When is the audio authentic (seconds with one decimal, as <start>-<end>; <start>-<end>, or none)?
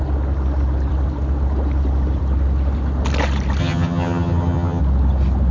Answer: 0.0-3.6; 4.8-5.5